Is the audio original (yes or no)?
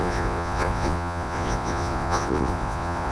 no